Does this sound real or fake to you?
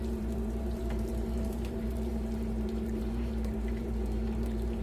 fake